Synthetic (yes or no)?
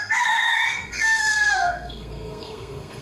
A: yes